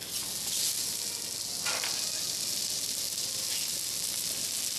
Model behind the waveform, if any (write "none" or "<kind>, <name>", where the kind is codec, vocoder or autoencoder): none